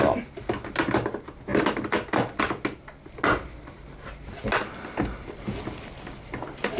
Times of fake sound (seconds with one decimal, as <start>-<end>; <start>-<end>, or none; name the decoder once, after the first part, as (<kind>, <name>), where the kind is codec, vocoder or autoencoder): none